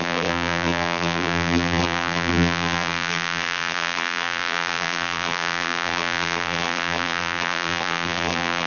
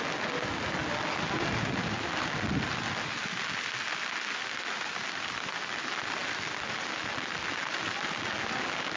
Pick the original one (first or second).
second